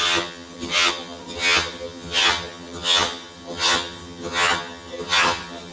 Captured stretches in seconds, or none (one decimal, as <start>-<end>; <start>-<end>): none